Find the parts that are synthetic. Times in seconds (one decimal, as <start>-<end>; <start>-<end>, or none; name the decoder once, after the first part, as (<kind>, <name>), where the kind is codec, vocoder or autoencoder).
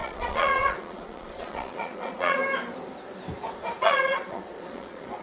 0.0-2.4 (vocoder, Vocos); 3.8-5.2